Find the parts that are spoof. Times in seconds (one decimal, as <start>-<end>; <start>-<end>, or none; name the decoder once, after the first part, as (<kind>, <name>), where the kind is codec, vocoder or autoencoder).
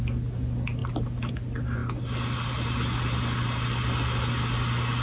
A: none